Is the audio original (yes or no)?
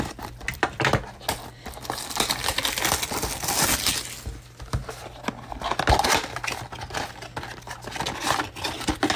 yes